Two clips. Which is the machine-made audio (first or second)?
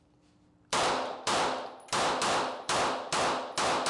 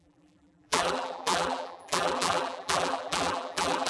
second